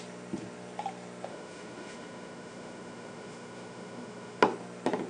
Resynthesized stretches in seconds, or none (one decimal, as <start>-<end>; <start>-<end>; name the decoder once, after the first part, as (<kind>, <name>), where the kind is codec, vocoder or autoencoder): 1.3-4.4 (autoencoder, DAC-VAE)